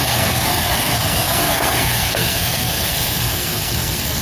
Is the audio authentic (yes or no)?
no